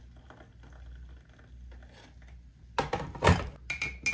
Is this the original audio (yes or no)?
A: yes